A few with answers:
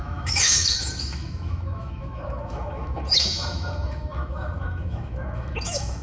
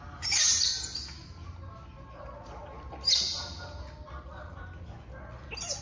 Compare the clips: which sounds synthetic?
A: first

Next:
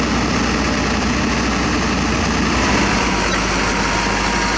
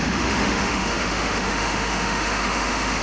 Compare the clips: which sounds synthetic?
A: second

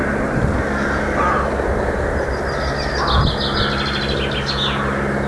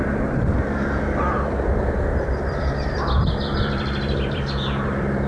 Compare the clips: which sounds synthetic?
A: second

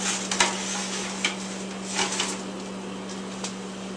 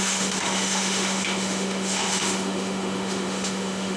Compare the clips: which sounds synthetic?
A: second